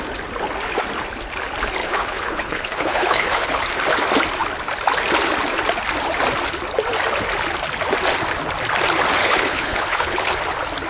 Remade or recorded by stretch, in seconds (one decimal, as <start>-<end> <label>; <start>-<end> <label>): 0.0-1.8 recorded; 1.8-3.6 remade; 3.6-9.2 recorded; 9.2-10.3 remade; 10.3-10.9 recorded